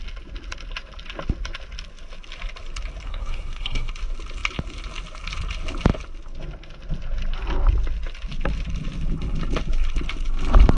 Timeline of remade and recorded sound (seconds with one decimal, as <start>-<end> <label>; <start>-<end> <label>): 0.0-3.1 recorded; 3.1-3.9 remade; 3.9-10.8 recorded